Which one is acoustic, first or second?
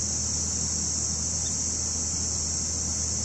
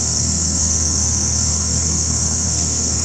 first